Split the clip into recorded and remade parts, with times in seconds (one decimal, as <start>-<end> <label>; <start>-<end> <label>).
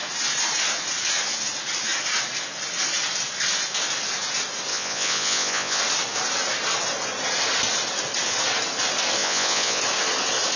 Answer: 0.0-4.7 recorded; 4.7-5.8 remade; 5.8-9.2 recorded; 9.2-9.8 remade; 9.8-10.6 recorded